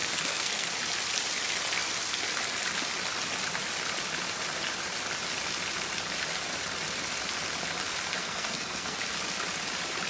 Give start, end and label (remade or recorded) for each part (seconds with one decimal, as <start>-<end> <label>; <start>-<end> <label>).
0.0-0.7 remade; 0.7-8.2 recorded; 8.2-9.0 remade; 9.0-10.1 recorded